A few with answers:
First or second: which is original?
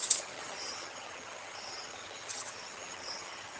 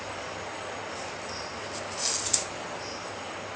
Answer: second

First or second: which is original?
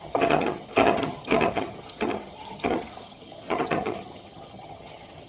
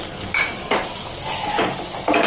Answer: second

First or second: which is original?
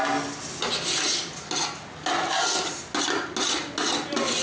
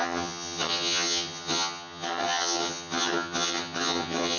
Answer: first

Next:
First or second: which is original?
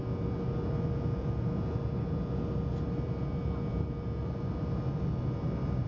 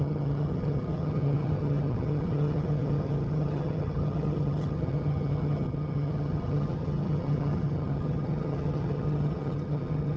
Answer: first